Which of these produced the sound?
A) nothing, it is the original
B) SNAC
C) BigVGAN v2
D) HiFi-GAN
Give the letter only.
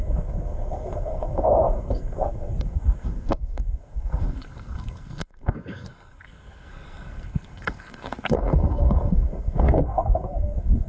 B